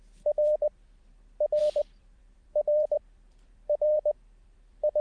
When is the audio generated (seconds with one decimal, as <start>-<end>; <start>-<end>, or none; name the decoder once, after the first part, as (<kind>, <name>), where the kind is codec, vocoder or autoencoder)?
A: 0.0-1.1 (vocoder, BigVGAN v2); 1.6-5.0